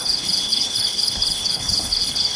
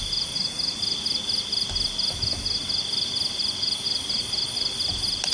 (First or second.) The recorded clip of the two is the second